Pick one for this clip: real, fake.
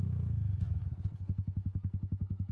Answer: fake